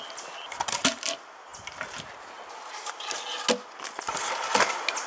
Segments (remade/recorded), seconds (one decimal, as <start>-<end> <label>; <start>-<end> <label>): 0.0-5.1 recorded